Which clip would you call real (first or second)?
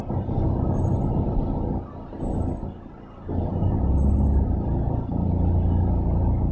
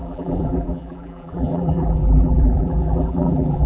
first